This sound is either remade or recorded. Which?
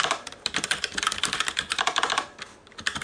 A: remade